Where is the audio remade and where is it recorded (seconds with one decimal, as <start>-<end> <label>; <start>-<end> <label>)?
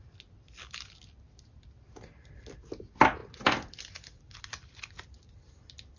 0.0-6.0 recorded